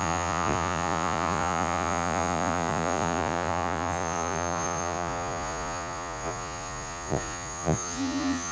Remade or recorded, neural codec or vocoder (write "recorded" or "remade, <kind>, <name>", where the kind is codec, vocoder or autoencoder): remade, vocoder, Vocos